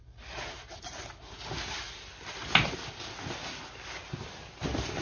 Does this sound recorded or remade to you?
recorded